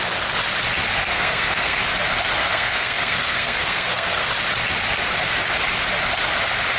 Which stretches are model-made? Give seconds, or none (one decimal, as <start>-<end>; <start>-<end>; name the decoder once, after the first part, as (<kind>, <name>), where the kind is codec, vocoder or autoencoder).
1.0-1.8 (codec, SNAC); 2.4-4.3